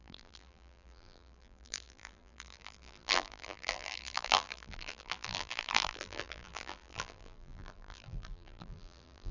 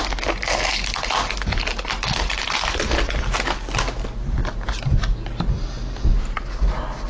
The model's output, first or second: first